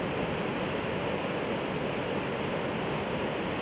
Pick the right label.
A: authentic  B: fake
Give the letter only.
A